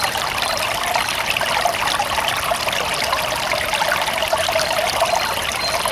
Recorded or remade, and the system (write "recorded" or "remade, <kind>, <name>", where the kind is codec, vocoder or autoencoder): recorded